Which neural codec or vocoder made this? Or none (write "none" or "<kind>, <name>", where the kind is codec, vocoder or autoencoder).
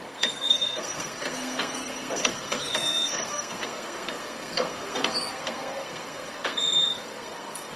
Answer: codec, SNAC